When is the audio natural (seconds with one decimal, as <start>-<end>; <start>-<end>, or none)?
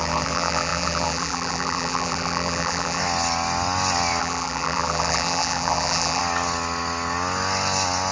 3.0-4.2; 6.2-8.1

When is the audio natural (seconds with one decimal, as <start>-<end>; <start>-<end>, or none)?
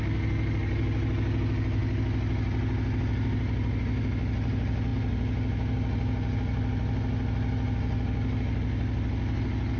0.0-9.8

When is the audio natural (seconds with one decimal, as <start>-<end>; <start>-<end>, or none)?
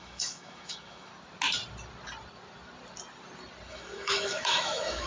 1.1-3.7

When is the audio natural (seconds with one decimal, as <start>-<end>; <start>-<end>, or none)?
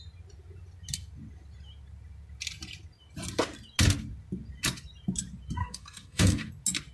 0.0-5.6; 6.5-6.9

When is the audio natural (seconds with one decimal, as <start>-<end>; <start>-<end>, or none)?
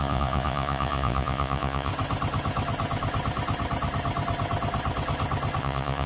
1.9-5.6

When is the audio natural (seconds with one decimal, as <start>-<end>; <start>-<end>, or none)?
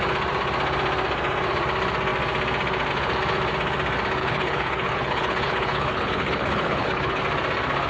0.0-4.2; 7.2-7.9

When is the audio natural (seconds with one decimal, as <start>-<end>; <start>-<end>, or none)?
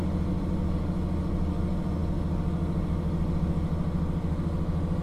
0.0-5.0